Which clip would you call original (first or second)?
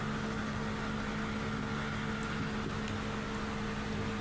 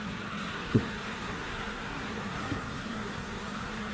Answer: first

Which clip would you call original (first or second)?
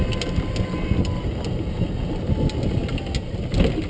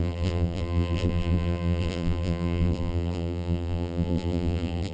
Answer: first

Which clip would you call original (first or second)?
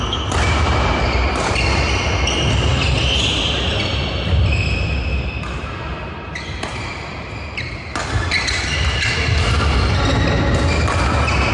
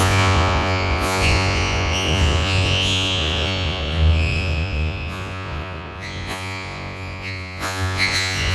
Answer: first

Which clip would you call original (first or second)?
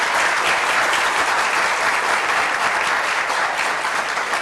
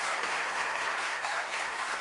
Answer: first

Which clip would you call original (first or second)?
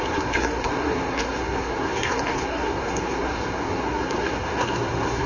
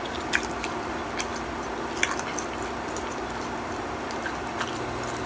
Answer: second